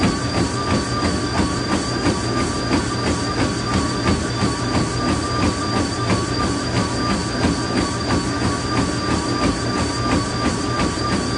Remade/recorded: recorded